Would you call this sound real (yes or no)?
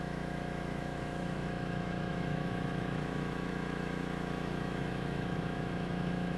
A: no